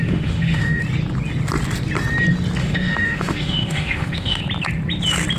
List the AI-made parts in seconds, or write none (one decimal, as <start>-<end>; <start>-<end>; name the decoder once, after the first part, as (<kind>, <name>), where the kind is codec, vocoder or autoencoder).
0.0-0.8 (autoencoder, DAC-VAE); 2.6-4.4